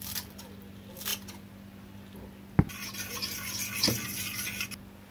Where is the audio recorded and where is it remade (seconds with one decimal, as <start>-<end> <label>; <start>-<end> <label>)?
0.0-5.1 recorded